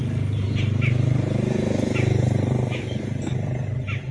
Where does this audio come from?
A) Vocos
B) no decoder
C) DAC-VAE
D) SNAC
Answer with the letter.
B